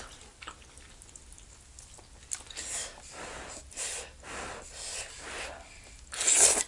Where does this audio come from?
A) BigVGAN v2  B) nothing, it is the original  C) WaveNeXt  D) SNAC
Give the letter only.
B